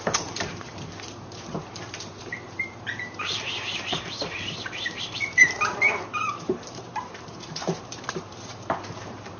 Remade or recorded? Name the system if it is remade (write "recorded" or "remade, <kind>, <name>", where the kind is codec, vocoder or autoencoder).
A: remade, vocoder, BigVGAN v2